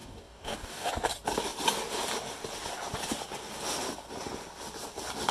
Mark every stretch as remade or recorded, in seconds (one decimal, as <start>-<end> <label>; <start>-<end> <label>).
0.0-0.9 remade; 0.9-5.3 recorded